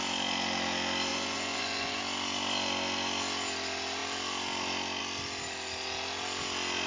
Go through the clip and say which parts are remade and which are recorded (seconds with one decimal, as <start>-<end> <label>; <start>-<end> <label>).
0.0-1.1 recorded; 1.1-2.0 remade; 2.0-6.9 recorded